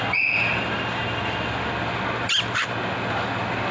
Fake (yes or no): no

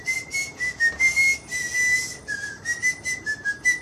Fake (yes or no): no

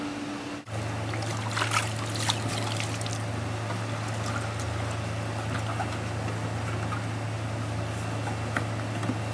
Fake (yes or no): no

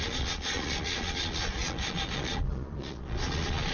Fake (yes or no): yes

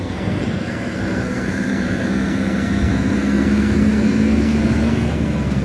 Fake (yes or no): yes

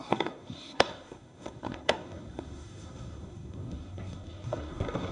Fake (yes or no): yes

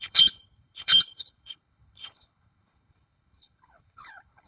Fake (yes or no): yes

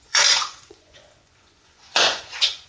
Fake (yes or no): yes